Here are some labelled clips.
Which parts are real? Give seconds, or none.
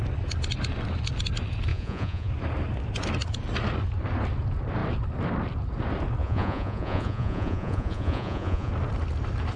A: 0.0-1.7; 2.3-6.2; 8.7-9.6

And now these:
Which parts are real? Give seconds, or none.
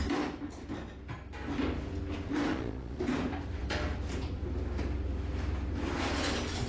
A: 0.0-2.5; 3.0-6.7